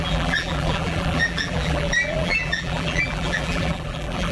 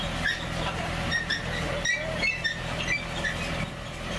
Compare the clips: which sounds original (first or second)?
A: second